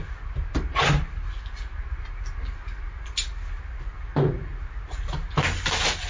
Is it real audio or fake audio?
real